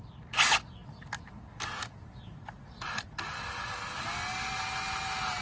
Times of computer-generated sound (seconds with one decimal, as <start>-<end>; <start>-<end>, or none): none